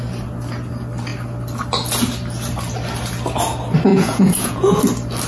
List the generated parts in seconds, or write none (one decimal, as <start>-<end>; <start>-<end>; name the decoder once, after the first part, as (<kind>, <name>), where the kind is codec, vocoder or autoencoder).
3.9-4.8 (vocoder, Vocos)